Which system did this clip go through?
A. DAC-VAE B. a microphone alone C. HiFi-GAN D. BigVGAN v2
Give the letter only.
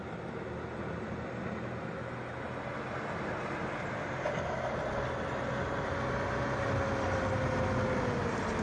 B